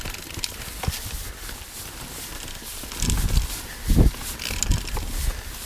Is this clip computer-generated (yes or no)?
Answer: no